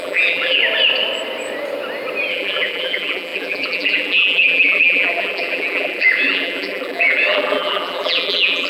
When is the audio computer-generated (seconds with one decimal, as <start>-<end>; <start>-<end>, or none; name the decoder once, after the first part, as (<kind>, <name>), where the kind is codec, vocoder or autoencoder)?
0.0-0.6 (vocoder, BigVGAN v2); 2.3-8.7